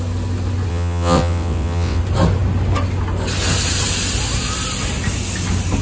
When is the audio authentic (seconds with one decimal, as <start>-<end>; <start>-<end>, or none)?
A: 0.0-0.7; 2.0-5.8